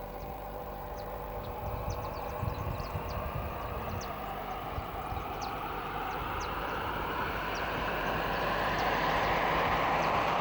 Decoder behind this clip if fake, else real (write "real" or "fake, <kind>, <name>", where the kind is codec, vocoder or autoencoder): fake, vocoder, BigVGAN v2